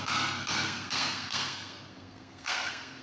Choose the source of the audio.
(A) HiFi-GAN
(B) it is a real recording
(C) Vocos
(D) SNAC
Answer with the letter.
D